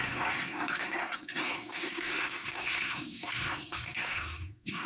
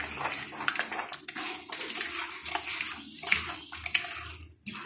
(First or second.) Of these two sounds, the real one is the second